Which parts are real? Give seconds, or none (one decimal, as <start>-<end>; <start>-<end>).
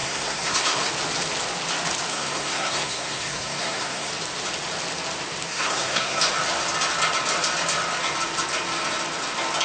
0.9-2.1; 4.1-5.5; 6.2-9.6